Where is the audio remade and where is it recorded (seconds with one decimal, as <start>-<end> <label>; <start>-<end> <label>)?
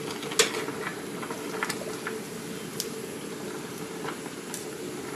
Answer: 0.0-5.2 recorded